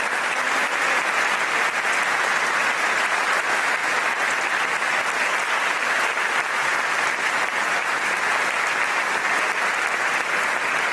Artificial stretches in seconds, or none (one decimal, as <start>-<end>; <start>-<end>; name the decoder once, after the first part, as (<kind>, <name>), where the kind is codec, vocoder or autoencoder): none

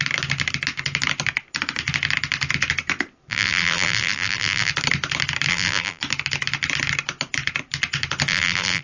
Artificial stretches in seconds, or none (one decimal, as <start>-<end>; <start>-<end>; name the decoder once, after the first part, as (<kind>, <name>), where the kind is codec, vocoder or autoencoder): 3.3-4.7 (vocoder, BigVGAN v2); 5.5-6.0; 8.3-8.8

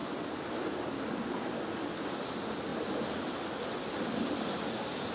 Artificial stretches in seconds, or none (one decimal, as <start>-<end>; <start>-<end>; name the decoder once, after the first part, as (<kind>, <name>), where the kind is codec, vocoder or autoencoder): none

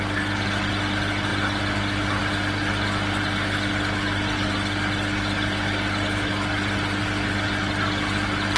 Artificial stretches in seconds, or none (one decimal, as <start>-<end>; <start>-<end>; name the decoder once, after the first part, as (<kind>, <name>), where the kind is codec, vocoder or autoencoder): none

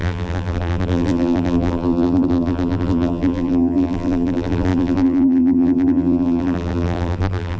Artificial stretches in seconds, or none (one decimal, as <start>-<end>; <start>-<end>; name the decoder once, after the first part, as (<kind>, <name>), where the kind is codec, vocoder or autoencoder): 0.0-7.6 (vocoder, BigVGAN v2)

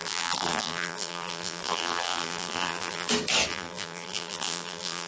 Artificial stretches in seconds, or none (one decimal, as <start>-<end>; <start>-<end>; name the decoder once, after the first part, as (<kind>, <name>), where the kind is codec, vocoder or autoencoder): 0.0-3.1 (vocoder, BigVGAN v2); 3.5-5.1

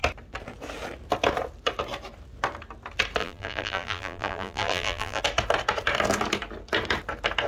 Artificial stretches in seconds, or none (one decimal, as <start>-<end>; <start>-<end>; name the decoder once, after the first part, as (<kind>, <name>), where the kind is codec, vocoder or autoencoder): 3.2-5.2 (vocoder, BigVGAN v2)